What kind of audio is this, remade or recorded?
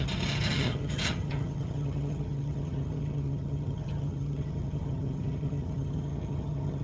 remade